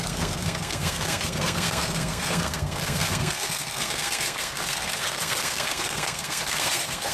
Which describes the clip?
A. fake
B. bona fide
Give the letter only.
A